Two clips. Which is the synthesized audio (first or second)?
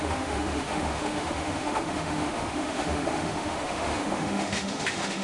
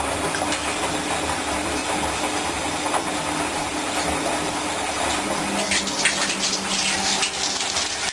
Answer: first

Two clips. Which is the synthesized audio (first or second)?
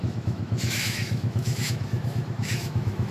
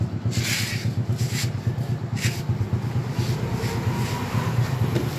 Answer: first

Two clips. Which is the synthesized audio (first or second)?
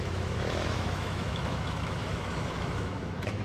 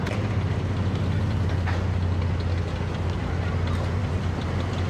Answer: first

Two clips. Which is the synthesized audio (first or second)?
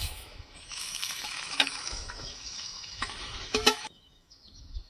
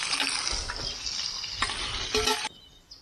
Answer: first